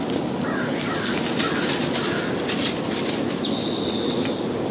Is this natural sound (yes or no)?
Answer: yes